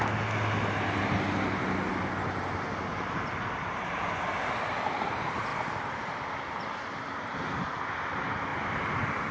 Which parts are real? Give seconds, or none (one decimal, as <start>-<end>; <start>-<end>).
0.0-9.3